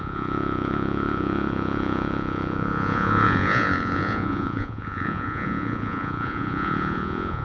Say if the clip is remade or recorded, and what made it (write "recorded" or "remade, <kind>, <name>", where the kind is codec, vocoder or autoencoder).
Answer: remade, vocoder, Vocos